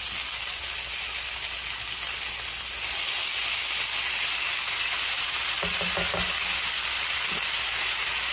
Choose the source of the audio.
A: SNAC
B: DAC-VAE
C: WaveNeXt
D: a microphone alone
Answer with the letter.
D